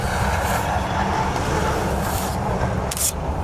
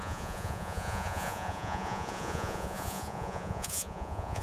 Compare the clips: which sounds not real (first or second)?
second